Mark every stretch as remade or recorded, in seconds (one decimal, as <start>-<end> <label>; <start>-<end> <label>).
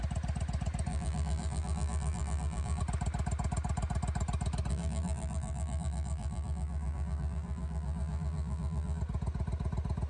0.0-0.9 recorded; 0.9-2.8 remade; 2.8-4.7 recorded; 4.7-9.0 remade; 9.0-10.1 recorded